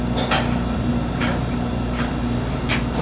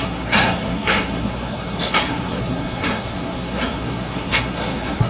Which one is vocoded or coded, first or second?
second